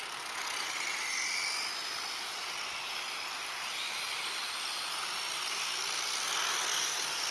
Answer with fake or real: real